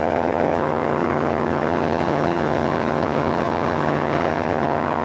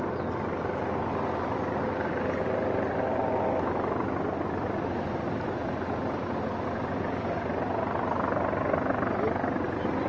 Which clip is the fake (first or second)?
first